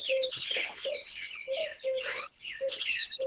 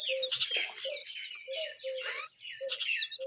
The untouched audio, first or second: second